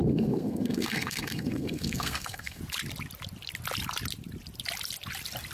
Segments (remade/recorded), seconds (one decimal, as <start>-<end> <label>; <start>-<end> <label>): 0.0-2.6 remade; 2.6-5.5 recorded